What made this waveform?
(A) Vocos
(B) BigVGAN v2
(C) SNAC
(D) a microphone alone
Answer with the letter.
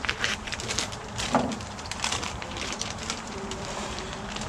B